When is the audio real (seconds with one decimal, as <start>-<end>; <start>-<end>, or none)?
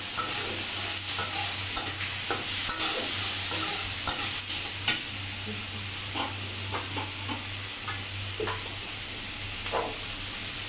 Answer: 0.0-10.7